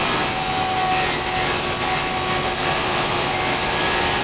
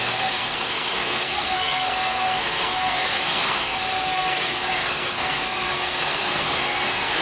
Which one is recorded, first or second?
first